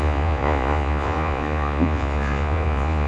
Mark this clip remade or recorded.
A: remade